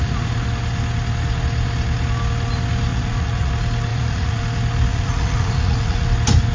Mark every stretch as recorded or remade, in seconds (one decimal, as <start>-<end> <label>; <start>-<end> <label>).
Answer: 0.0-2.9 recorded; 2.9-3.5 remade; 3.5-3.9 recorded; 3.9-4.4 remade; 4.4-4.9 recorded; 4.9-6.1 remade; 6.1-6.5 recorded